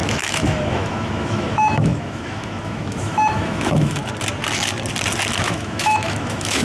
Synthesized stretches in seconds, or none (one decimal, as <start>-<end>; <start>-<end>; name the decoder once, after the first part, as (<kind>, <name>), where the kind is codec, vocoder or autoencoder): 0.0-4.0 (autoencoder, DAC-VAE); 5.4-6.6

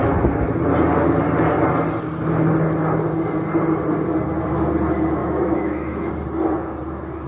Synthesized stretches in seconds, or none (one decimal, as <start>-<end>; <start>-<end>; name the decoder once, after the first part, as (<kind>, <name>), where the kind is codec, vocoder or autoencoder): 5.2-6.1 (autoencoder, DAC-VAE)